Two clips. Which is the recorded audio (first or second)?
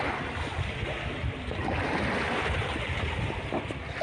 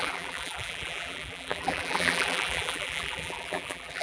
first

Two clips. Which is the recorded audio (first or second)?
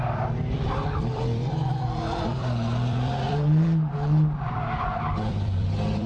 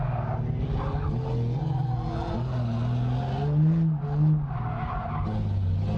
second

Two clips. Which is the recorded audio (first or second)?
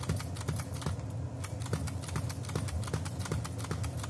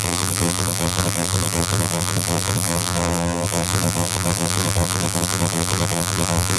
first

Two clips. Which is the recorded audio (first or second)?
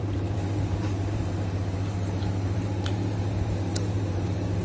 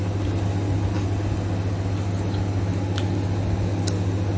second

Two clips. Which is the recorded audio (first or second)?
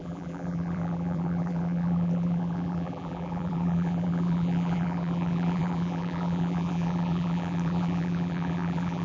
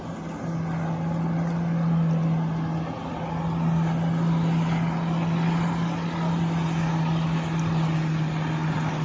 second